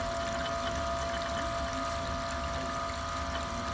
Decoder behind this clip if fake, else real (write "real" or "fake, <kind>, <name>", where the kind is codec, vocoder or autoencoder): real